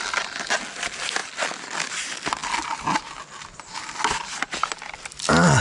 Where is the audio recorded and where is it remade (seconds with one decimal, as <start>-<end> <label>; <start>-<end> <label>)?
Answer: 0.0-5.6 recorded